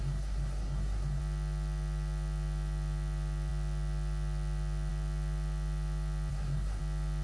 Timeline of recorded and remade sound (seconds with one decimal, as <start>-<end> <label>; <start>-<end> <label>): 0.0-1.2 remade; 1.2-6.3 recorded; 6.3-6.8 remade; 6.8-7.2 recorded